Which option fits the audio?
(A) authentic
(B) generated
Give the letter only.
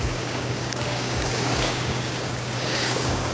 B